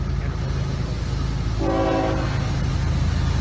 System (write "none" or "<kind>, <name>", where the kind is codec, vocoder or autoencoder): none